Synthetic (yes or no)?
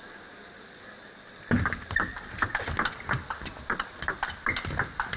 no